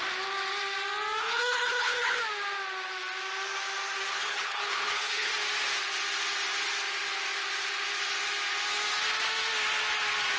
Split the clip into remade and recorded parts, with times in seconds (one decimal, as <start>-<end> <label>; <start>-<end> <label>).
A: 0.0-1.2 recorded; 1.2-2.2 remade; 2.2-4.1 recorded; 4.1-5.3 remade; 5.3-10.4 recorded